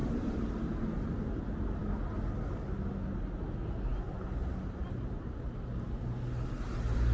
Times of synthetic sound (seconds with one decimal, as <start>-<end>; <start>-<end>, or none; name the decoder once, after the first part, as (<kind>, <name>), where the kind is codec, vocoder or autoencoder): none